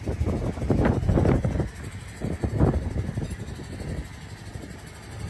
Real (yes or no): yes